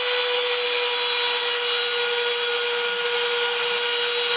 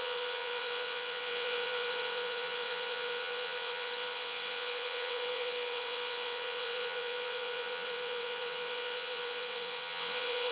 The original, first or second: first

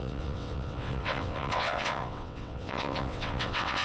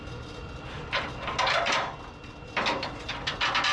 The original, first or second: second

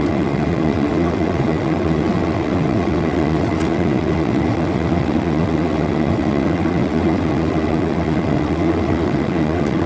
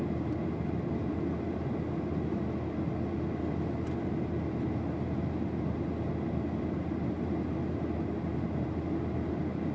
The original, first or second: second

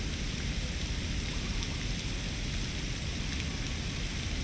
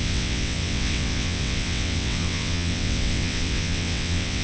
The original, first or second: first